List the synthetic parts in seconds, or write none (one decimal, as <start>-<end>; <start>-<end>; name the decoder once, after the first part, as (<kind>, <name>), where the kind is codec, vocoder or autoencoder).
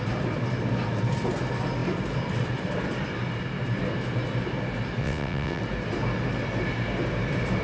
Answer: 5.0-5.6 (vocoder, WaveNeXt)